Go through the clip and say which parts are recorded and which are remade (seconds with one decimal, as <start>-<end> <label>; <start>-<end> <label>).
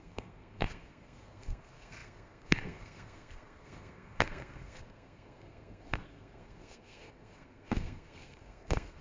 0.0-9.0 remade